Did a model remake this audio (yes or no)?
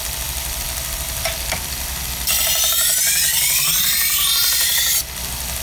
no